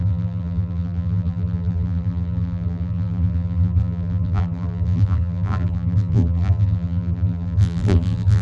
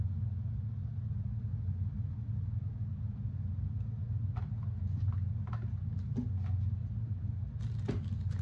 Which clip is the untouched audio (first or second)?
second